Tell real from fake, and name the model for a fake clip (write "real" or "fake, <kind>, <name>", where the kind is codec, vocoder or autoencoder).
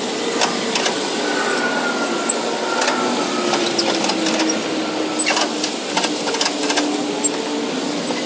real